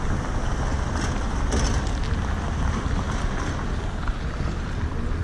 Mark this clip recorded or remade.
recorded